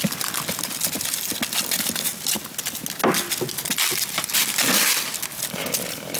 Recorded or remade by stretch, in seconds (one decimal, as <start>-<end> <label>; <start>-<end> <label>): 0.0-6.2 recorded